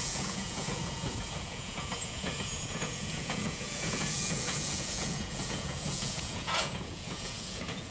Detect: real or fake fake